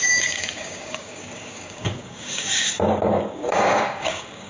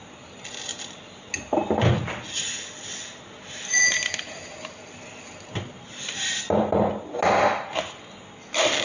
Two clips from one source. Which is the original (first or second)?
second